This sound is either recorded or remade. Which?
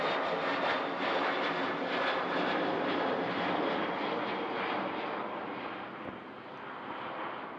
recorded